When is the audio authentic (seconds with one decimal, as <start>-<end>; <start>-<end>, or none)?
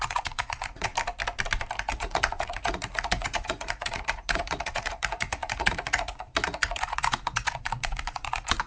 0.9-1.9